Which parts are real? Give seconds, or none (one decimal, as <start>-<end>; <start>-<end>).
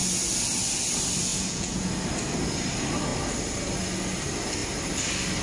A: 0.0-1.3; 1.9-5.4